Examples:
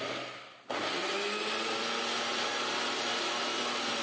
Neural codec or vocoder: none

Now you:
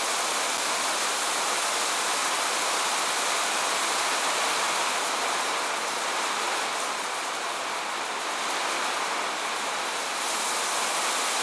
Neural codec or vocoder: none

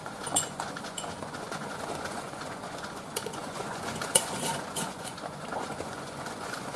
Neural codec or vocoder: vocoder, Vocos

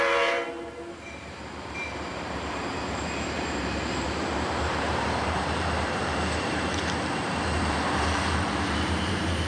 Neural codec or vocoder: vocoder, BigVGAN v2